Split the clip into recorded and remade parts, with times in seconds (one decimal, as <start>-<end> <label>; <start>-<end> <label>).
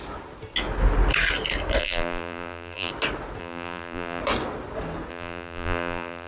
0.0-1.8 recorded; 1.8-2.9 remade; 2.9-3.4 recorded; 3.4-4.2 remade; 4.2-5.1 recorded; 5.1-6.3 remade